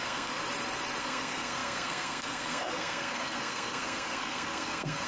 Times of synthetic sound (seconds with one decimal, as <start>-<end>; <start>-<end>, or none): 0.0-0.4; 1.0-5.1